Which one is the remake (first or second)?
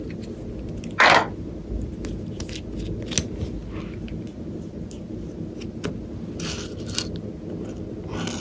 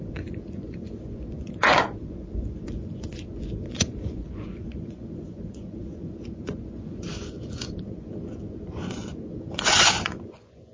second